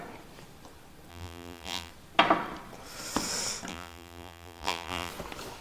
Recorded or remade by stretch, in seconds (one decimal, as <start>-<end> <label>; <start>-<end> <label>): 0.0-1.1 recorded; 1.1-1.9 remade; 1.9-3.7 recorded; 3.7-5.1 remade; 5.1-5.6 recorded